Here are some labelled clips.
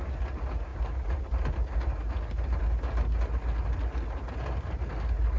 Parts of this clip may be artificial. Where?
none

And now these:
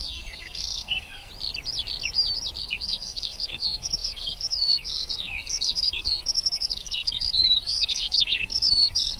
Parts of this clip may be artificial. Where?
0.0-1.3 (codec, SNAC); 2.6-9.2

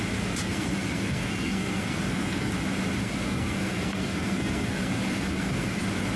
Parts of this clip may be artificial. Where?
0.4-2.5 (codec, SNAC); 3.0-5.8

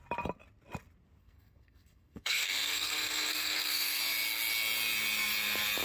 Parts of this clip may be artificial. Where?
1.2-4.0 (codec, SNAC)

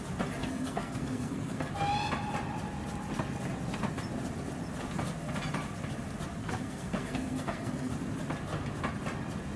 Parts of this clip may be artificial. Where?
0.4-1.7 (codec, SNAC); 6.4-7.9

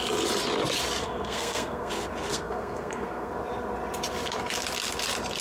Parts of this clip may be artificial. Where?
1.0-1.9 (codec, SNAC); 2.3-3.3

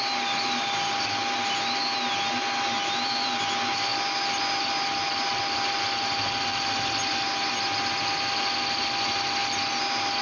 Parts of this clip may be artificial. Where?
none